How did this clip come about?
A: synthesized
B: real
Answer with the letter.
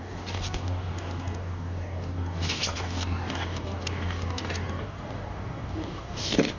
A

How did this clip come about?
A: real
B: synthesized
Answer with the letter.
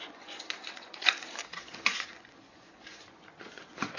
B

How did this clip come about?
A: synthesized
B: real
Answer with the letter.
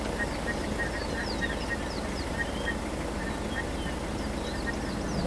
B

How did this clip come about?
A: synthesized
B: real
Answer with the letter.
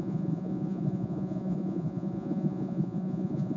A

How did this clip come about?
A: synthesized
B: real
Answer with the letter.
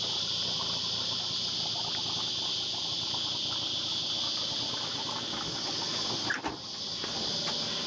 B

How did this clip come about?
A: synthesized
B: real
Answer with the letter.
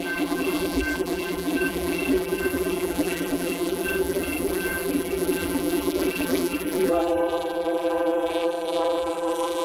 A